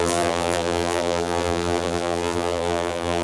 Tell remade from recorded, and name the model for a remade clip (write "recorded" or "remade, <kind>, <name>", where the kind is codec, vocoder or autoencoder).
remade, vocoder, BigVGAN v2